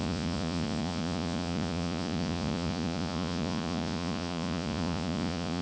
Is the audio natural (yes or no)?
no